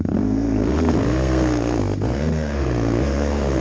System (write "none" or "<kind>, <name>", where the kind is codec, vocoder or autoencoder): codec, SNAC